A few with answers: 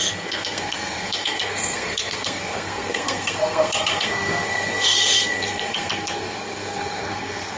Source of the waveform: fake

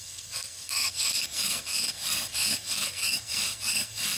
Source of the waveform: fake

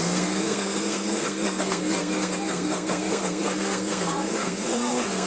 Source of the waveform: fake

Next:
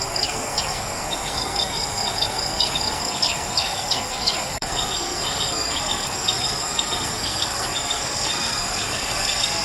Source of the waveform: fake